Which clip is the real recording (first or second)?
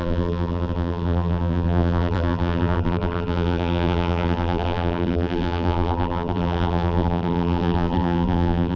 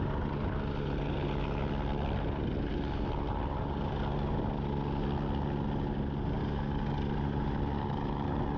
second